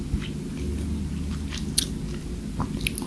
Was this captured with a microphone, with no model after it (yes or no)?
yes